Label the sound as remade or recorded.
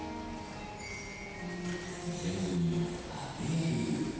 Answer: recorded